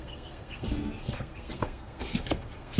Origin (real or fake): fake